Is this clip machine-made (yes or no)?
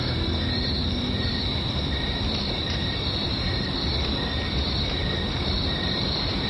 yes